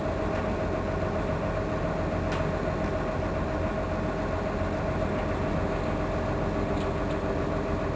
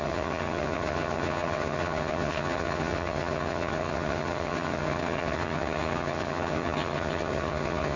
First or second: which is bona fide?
first